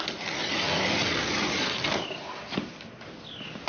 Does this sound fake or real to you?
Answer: real